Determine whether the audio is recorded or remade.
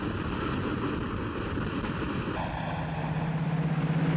recorded